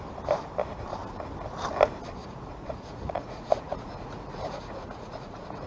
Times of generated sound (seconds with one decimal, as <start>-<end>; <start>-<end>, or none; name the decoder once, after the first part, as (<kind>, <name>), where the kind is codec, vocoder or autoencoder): 2.2-5.7 (vocoder, Vocos)

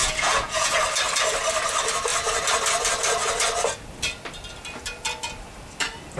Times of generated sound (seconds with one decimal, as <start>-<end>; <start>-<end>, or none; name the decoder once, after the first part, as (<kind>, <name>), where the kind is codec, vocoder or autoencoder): 0.0-0.8 (vocoder, Vocos)

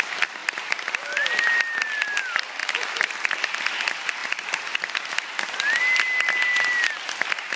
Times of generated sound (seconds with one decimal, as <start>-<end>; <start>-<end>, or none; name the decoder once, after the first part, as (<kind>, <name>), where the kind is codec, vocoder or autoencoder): none